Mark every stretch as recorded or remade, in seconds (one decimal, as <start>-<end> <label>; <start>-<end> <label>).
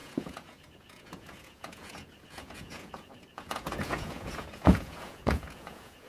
0.0-6.1 remade